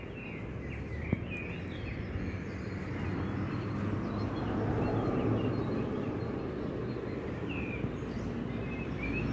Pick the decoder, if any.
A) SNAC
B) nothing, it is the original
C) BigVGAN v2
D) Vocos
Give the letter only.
B